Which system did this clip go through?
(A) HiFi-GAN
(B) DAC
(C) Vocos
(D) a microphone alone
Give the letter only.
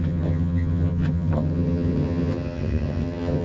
A